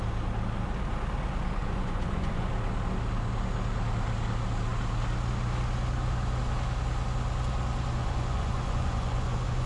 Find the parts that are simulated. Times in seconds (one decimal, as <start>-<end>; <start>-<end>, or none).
1.6-2.5; 8.0-9.7